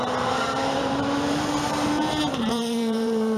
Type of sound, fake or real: fake